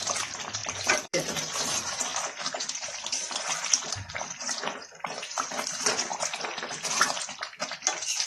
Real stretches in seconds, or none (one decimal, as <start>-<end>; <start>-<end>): 2.1-3.3